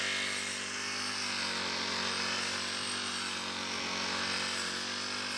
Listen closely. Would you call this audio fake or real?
real